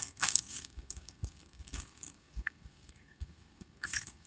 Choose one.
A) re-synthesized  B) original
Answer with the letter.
A